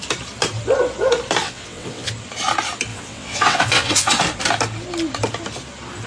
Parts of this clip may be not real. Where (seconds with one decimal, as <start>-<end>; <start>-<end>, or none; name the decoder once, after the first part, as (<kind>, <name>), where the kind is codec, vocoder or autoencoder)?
1.4-2.1 (vocoder, WaveNeXt); 2.9-4.2